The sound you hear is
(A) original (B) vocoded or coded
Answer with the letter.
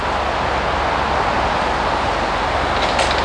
A